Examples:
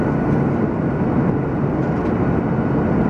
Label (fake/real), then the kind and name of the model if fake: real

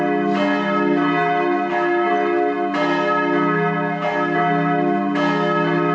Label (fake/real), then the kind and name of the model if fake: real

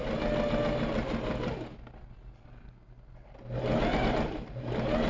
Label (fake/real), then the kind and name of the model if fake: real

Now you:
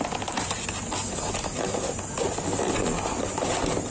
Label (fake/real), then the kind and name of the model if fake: real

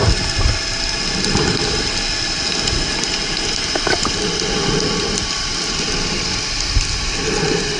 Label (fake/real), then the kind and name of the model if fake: real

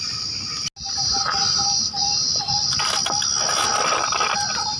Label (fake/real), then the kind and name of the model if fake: real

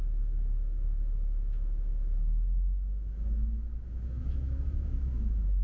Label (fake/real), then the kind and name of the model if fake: fake, autoencoder, DAC-VAE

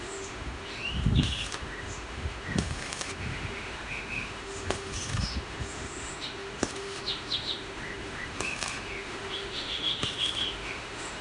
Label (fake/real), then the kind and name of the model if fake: fake, autoencoder, DAC-VAE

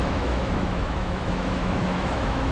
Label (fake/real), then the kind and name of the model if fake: fake, autoencoder, DAC-VAE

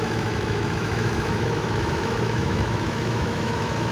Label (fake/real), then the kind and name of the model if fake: fake, autoencoder, DAC-VAE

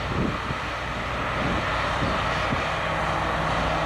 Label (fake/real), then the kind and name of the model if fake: real